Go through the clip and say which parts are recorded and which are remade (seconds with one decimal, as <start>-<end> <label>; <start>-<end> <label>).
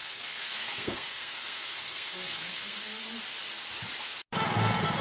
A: 0.0-3.0 remade; 3.0-5.0 recorded